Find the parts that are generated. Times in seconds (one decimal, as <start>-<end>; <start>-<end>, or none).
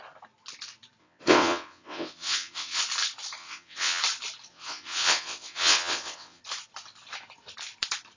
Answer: 1.0-2.8; 3.4-4.0; 4.5-6.4